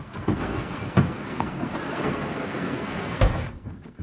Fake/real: fake